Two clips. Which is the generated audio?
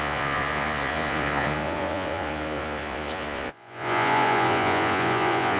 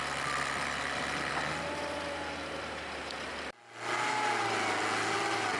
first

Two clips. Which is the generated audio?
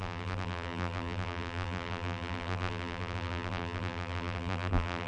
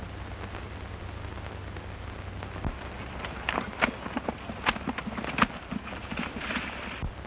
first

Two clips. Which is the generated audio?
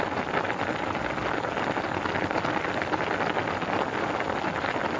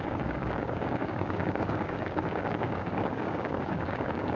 second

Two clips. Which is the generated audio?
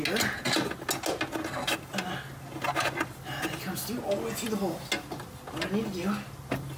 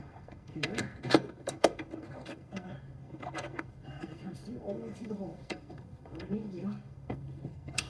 second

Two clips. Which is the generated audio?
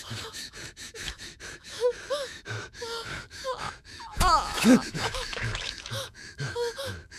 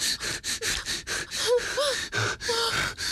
first